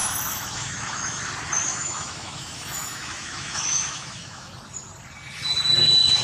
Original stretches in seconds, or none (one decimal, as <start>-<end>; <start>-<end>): 1.2-1.7; 4.5-6.2